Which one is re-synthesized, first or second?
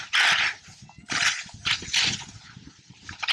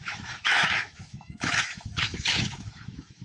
second